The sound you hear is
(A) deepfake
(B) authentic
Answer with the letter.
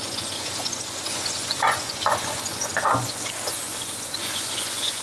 A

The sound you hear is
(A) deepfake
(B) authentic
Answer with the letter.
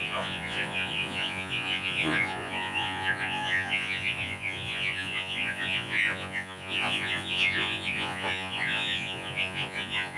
A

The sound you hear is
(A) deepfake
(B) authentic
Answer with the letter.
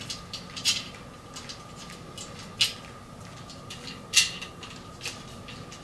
B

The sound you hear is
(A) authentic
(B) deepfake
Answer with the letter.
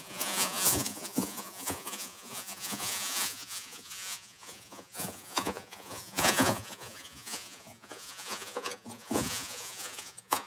B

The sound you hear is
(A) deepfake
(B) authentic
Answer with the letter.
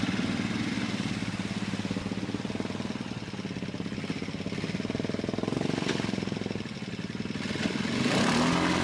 B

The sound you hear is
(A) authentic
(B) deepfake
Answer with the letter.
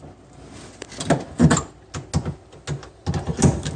A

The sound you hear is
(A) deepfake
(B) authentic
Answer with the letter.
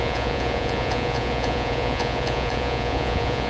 A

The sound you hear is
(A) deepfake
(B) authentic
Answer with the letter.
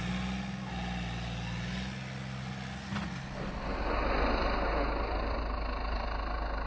B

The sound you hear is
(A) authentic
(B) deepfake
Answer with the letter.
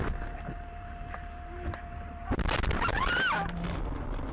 A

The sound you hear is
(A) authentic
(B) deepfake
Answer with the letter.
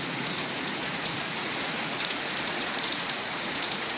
B